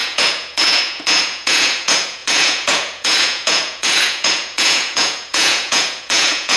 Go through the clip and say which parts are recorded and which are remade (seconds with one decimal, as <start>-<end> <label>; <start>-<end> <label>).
0.0-6.6 remade